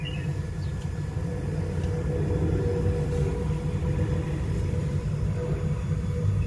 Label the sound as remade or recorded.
recorded